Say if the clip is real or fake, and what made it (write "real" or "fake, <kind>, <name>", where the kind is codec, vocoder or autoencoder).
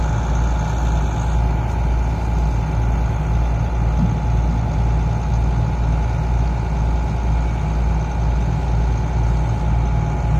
real